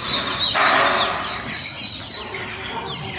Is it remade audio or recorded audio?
recorded